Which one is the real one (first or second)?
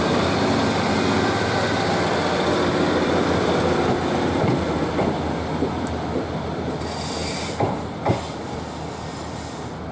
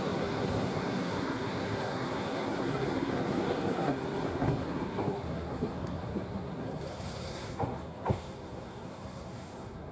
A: first